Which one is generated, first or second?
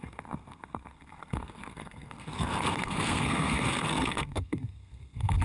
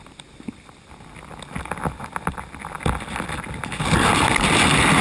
first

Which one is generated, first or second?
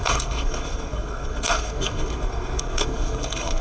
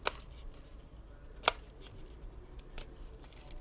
first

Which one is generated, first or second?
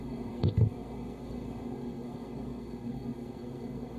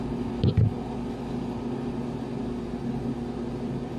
first